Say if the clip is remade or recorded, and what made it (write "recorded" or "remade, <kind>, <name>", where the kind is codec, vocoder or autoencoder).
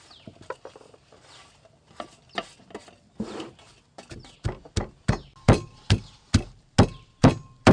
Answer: recorded